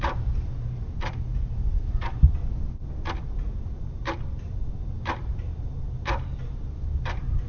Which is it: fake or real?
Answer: fake